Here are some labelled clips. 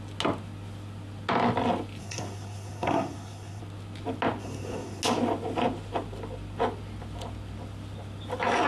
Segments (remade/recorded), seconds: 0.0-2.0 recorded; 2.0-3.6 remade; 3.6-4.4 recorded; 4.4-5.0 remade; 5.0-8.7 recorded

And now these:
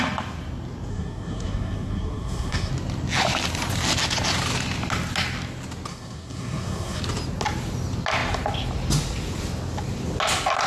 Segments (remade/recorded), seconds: 0.0-0.9 recorded; 0.9-2.7 remade; 2.7-5.9 recorded; 5.9-7.0 remade; 7.0-10.7 recorded

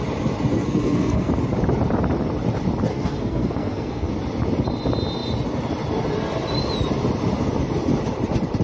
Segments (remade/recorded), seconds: 0.0-0.6 recorded; 0.6-1.3 remade; 1.3-2.9 recorded; 2.9-4.1 remade; 4.1-8.6 recorded

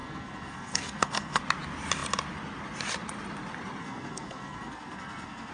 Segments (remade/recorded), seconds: 0.0-1.4 remade; 1.4-3.8 recorded; 3.8-5.5 remade

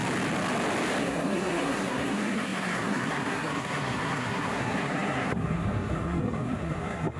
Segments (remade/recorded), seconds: 0.0-1.0 recorded; 1.0-7.2 remade

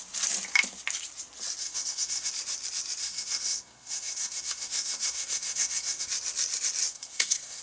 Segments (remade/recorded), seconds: 0.0-1.6 recorded; 1.6-2.3 remade; 2.3-3.0 recorded; 3.0-6.1 remade; 6.1-6.9 recorded; 6.9-7.6 remade